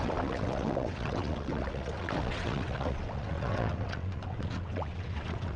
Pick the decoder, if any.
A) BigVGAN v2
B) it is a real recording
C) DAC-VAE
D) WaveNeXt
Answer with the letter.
D